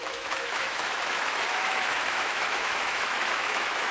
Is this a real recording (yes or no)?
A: no